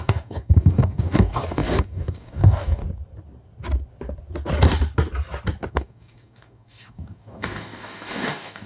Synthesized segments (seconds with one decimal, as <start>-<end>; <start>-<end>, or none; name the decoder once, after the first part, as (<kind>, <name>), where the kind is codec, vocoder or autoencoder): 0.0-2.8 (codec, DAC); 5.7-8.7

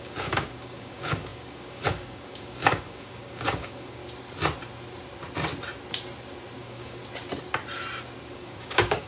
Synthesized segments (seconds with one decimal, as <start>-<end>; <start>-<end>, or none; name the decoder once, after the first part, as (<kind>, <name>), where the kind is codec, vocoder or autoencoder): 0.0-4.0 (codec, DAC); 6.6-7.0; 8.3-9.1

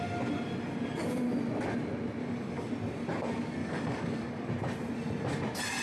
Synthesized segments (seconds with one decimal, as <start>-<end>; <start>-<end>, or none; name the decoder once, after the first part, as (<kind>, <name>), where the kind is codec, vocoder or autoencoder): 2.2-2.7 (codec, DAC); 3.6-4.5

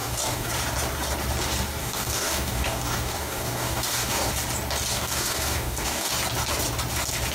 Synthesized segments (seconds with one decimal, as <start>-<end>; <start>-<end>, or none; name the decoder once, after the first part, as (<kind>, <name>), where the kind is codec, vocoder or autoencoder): 0.0-0.5 (codec, DAC); 1.8-4.3; 4.9-6.1

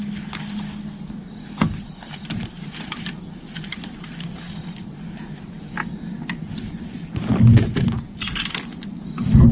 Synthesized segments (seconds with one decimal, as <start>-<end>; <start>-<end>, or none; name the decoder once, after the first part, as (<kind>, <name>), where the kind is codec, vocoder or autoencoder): none

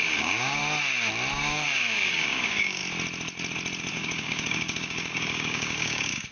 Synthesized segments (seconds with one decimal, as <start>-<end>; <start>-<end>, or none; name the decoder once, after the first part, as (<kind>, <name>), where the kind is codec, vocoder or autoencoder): 0.0-0.6 (codec, DAC); 1.3-2.8; 3.9-6.3

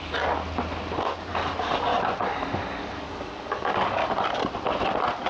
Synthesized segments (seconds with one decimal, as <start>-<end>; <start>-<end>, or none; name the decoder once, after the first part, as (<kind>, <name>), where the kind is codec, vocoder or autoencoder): 0.0-0.4 (codec, DAC); 2.2-4.0